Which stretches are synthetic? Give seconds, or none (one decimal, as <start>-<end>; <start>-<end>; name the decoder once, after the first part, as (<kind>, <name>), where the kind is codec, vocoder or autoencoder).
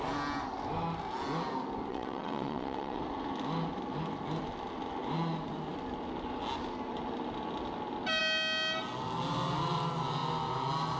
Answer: 1.9-3.0 (vocoder, WaveNeXt)